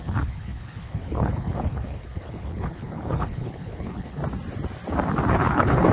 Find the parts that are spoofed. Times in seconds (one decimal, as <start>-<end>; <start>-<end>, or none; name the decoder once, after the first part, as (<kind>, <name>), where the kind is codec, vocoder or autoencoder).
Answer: 0.0-4.2 (codec, HILCodec); 5.3-5.9